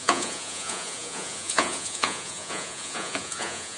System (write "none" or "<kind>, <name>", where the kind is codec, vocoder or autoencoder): vocoder, Vocos